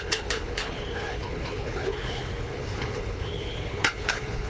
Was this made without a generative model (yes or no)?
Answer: no